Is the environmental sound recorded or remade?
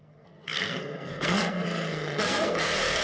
remade